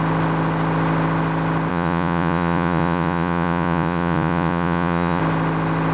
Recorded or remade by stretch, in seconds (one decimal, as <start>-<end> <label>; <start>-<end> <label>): 0.0-1.7 recorded; 1.7-5.2 remade; 5.2-5.9 recorded